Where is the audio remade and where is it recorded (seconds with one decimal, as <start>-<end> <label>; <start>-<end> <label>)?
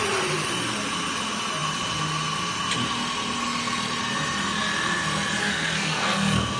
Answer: 0.0-5.4 recorded; 5.4-6.6 remade